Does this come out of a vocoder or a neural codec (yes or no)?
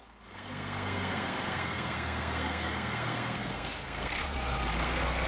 yes